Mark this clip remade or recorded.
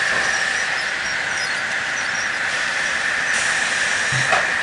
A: recorded